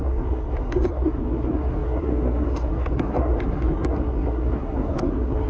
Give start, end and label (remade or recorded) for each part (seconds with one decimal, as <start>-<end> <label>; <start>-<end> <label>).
0.0-5.5 remade